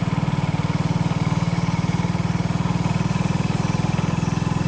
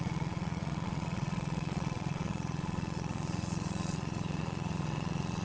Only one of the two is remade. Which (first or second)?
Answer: second